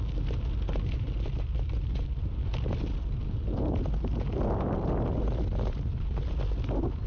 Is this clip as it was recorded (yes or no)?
yes